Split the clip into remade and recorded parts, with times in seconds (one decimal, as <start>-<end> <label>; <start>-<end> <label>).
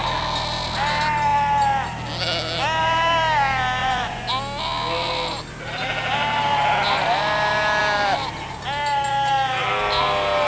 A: 0.0-3.8 recorded; 3.8-4.3 remade; 4.3-10.5 recorded